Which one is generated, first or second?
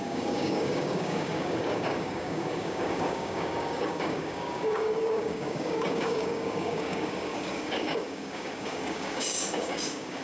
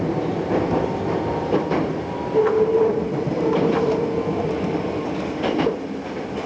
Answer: first